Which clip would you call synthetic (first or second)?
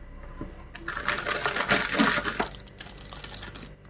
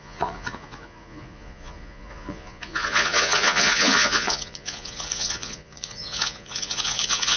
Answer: second